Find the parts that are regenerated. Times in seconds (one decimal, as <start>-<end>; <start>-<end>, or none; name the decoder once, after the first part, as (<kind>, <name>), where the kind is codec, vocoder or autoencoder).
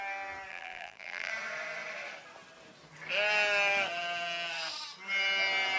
0.5-1.3 (vocoder, BigVGAN v2)